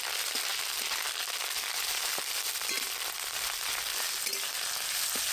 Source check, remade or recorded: recorded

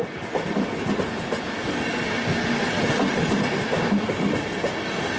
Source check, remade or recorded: recorded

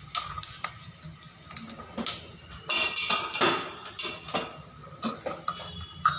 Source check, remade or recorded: recorded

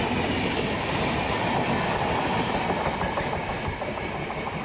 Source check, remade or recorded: recorded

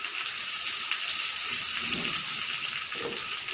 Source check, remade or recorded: recorded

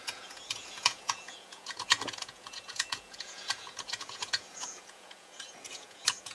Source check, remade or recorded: remade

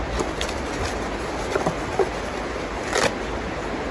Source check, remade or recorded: recorded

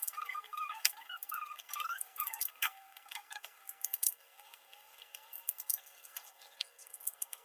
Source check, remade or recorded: remade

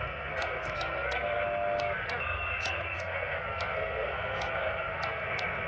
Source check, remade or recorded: remade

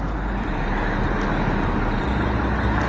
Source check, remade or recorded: recorded